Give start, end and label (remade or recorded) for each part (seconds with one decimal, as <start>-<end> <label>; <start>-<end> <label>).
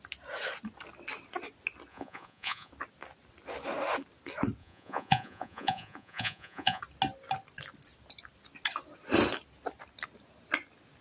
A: 0.0-1.9 recorded; 1.9-2.7 remade; 2.7-4.6 recorded; 4.6-6.8 remade; 6.8-11.0 recorded